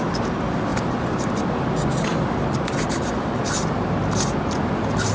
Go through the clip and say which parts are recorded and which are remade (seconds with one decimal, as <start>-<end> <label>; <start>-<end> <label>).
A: 0.0-5.1 recorded